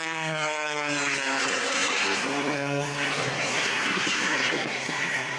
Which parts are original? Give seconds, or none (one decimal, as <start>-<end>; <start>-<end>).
none

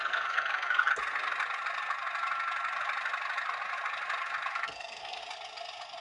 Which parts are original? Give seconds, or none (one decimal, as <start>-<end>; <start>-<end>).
0.9-4.5; 5.2-6.0

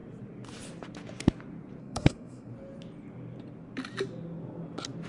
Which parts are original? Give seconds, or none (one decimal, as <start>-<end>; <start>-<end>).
0.0-1.8; 2.5-5.1

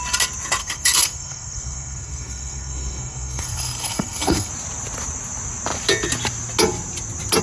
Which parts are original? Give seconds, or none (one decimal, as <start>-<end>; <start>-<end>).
0.0-0.6; 4.5-7.4